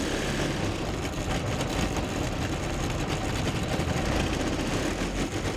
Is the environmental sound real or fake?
real